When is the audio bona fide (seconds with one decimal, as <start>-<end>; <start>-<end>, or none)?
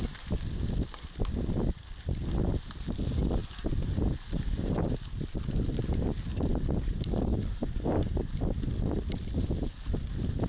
0.0-7.3; 8.3-10.5